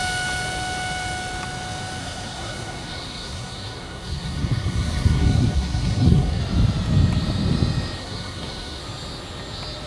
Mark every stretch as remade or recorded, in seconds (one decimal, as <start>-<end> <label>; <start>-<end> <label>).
0.0-2.0 recorded; 2.0-6.4 remade; 6.4-8.0 recorded; 8.0-8.8 remade; 8.8-9.9 recorded